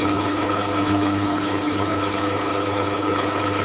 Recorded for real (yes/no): no